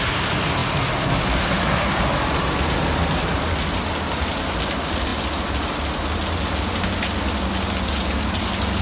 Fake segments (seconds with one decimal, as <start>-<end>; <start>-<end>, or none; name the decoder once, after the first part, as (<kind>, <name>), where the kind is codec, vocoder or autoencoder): none